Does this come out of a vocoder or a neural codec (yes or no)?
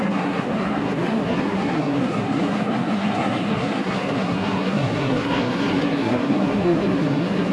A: yes